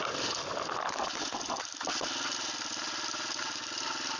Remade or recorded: recorded